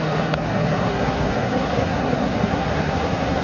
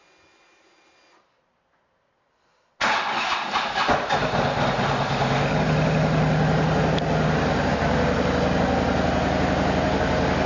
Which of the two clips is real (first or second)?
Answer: second